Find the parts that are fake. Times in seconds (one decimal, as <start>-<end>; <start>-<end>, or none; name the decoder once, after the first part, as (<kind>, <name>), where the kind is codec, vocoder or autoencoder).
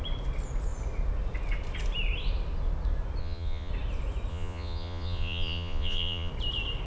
3.2-3.7 (vocoder, Vocos); 4.3-6.3